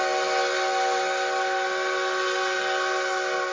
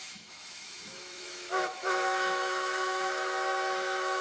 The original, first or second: first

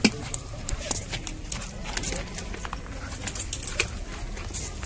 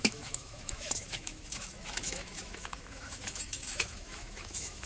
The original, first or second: first